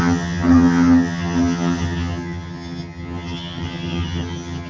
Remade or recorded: remade